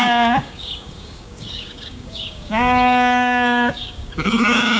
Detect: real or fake fake